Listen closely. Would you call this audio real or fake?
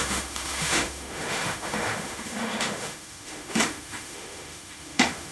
fake